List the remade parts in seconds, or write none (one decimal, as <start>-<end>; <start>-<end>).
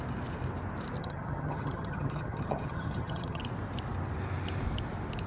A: 1.0-3.4